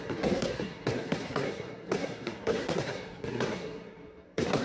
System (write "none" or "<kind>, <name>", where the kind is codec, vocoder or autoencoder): codec, SNAC